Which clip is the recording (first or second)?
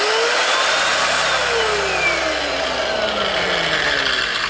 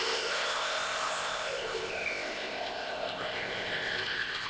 first